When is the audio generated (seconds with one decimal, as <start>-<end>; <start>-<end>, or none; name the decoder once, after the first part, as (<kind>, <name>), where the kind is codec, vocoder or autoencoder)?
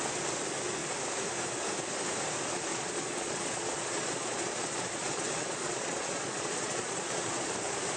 2.7-7.5 (vocoder, Vocos)